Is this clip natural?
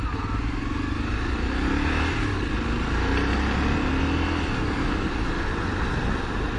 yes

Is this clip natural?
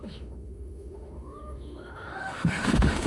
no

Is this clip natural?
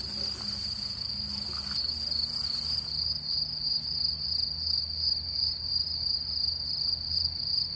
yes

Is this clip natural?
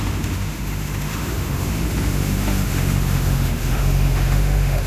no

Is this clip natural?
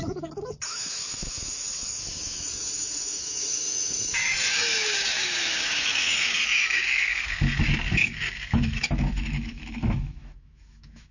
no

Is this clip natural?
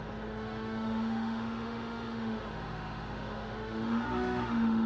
no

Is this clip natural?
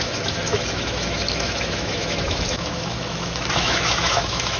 no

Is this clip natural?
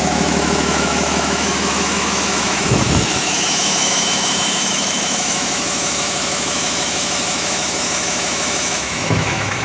no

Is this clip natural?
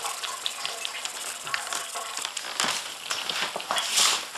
yes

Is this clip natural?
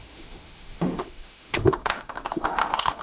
no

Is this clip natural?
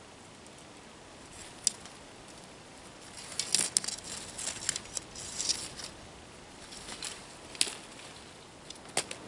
yes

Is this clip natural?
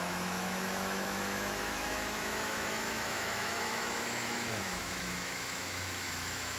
no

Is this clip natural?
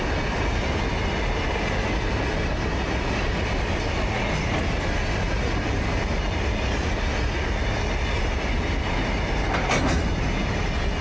yes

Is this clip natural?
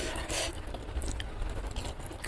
yes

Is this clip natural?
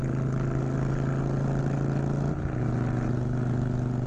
yes